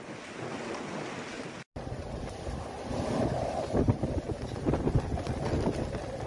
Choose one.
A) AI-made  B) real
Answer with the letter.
B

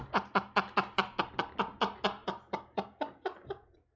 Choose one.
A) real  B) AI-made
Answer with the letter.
A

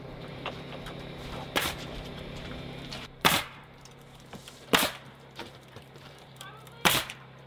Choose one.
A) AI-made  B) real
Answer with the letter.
A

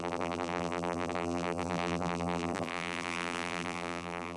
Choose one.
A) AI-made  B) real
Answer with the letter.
A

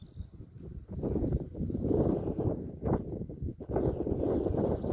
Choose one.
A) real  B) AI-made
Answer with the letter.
A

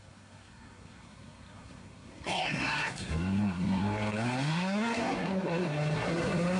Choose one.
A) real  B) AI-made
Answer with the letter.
B